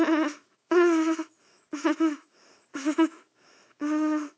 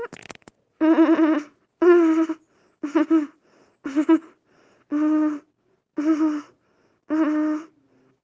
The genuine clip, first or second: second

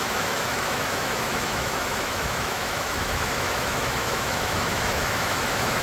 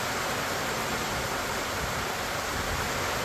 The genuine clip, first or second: second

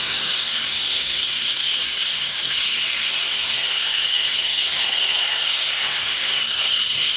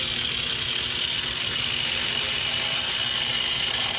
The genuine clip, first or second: second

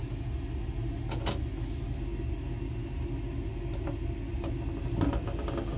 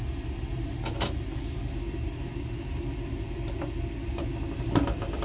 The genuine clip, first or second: first